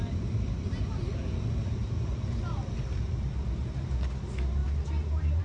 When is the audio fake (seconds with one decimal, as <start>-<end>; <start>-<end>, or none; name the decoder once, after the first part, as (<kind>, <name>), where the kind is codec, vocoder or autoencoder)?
none